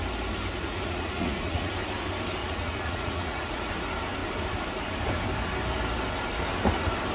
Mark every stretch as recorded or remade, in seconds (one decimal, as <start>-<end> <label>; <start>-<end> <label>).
0.0-0.6 recorded; 0.6-1.7 remade; 1.7-2.4 recorded; 2.4-3.7 remade; 3.7-7.1 recorded